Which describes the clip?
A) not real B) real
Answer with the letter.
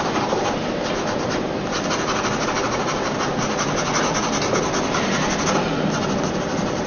B